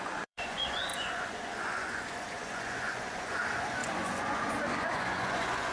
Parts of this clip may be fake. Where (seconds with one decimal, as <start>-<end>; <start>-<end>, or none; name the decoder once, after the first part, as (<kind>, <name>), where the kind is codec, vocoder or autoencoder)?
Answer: 0.0-5.7 (vocoder, Vocos)